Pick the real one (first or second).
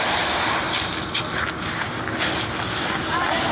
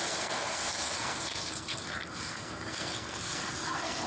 first